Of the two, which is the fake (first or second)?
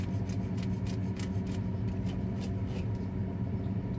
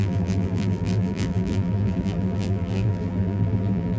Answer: second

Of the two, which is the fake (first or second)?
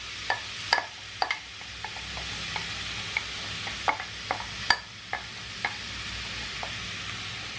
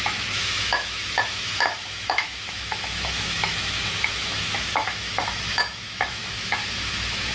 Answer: second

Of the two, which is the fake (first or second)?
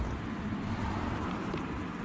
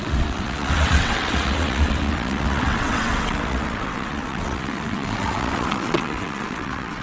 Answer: second